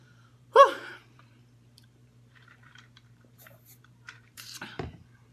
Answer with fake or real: fake